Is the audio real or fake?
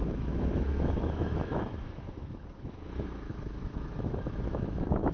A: fake